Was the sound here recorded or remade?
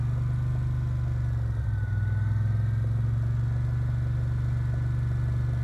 recorded